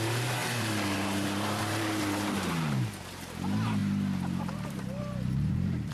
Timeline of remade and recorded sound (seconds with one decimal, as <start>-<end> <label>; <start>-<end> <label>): 0.0-3.8 remade; 3.8-4.4 recorded; 4.4-5.9 remade